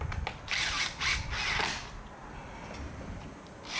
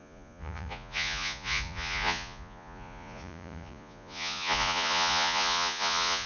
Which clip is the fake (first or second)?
second